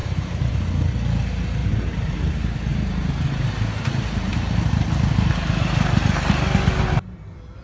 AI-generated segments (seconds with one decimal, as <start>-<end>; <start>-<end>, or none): 0.0-0.6; 1.6-2.3; 2.7-3.5